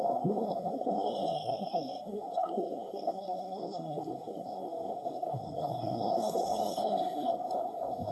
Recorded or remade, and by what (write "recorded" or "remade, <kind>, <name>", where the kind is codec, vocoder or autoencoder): remade, codec, SNAC